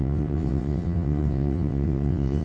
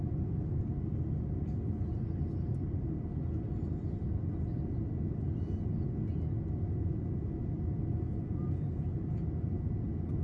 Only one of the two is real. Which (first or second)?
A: second